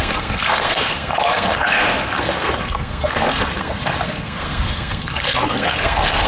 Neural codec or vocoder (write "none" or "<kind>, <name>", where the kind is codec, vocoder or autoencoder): codec, SNAC